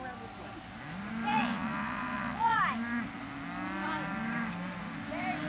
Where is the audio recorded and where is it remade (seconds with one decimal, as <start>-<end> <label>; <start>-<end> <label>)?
0.0-1.3 recorded; 1.3-2.6 remade; 2.6-5.5 recorded